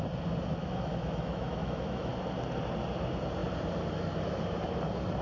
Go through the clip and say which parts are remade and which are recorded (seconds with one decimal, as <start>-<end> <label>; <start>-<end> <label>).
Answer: 0.0-0.6 recorded; 0.6-2.1 remade; 2.1-5.2 recorded